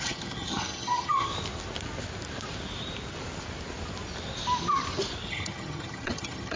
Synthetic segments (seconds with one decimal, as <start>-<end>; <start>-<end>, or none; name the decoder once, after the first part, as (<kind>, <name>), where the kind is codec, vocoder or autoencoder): 0.0-1.3 (vocoder, HiFi-GAN); 5.3-6.6